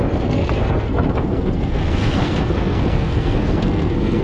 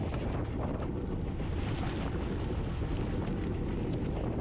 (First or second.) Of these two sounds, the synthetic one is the first